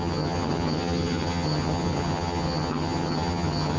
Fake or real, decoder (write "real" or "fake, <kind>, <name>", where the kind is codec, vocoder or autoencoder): fake, vocoder, HiFi-GAN